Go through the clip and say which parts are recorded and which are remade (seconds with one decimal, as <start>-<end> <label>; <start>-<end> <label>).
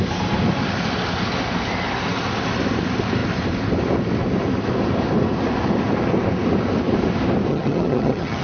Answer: 0.0-7.5 recorded; 7.5-8.4 remade